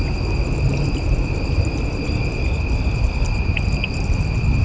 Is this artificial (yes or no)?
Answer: no